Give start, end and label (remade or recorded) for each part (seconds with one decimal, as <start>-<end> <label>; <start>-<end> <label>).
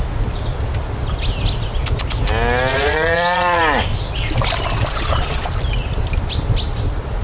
0.0-2.7 recorded; 2.7-3.6 remade; 3.6-4.9 recorded; 4.9-5.5 remade; 5.5-7.2 recorded